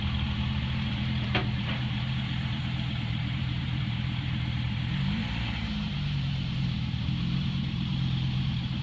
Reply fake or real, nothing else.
fake